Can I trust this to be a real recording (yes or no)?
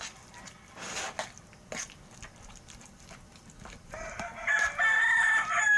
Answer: yes